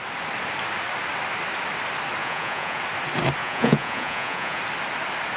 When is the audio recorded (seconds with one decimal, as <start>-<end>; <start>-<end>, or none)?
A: 0.0-2.2; 2.8-3.4; 4.6-5.4